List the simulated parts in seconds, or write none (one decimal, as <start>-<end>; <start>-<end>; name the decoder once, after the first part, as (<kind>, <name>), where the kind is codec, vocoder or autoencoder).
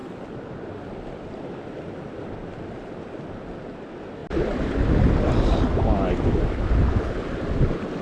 none